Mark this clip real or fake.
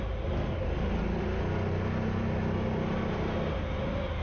real